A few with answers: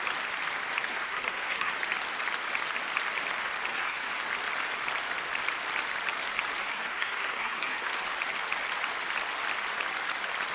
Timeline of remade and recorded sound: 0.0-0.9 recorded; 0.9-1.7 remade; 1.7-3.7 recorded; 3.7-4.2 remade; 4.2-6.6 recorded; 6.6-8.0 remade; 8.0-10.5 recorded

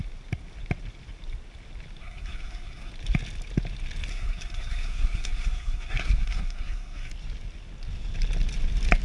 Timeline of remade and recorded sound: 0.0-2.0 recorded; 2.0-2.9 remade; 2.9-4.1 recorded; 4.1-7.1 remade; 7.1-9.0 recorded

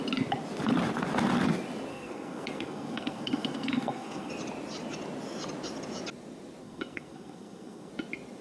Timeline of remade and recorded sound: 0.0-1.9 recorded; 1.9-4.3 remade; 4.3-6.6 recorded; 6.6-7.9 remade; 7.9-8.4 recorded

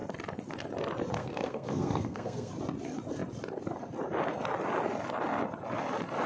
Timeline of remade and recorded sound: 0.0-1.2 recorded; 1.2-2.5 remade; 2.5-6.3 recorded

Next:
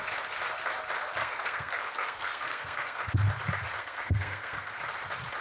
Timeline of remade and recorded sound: 0.0-1.2 recorded; 1.2-3.0 remade; 3.0-3.8 recorded; 3.8-4.8 remade; 4.8-5.4 recorded

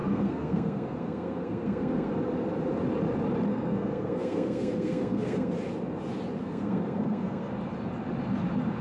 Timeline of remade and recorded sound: 0.0-2.1 remade; 2.1-3.5 recorded; 3.5-5.5 remade; 5.5-6.4 recorded; 6.4-7.5 remade; 7.5-8.8 recorded